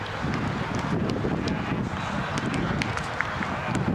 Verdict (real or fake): real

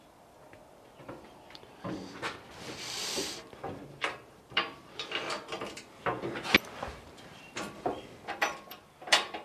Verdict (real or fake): fake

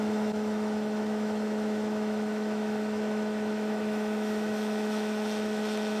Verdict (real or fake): fake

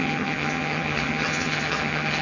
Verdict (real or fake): fake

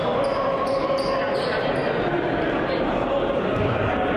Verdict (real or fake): real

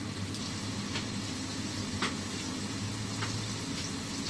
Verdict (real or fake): real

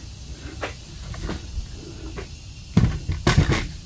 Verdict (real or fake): real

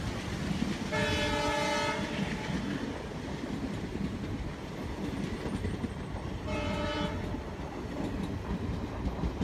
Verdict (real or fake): real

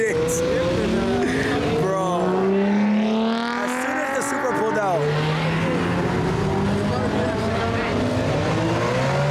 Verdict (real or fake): real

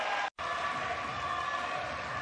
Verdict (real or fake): real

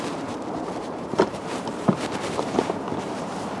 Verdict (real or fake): fake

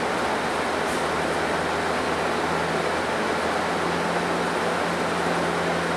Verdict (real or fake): real